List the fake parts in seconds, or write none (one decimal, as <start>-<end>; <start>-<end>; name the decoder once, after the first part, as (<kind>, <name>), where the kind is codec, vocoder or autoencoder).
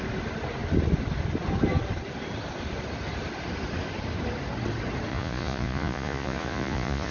5.1-7.1 (vocoder, Vocos)